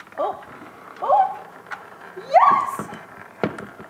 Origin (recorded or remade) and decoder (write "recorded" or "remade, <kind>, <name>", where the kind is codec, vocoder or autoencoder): remade, vocoder, BigVGAN v2